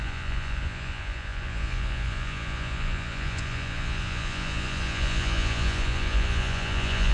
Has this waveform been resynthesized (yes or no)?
yes